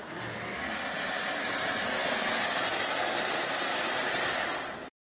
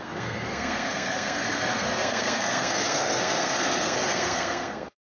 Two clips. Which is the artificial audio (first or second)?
second